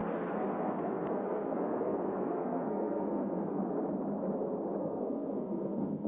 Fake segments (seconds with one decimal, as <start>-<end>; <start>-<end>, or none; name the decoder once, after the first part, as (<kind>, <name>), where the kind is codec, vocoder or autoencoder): 0.0-3.6 (codec, SNAC); 4.8-6.1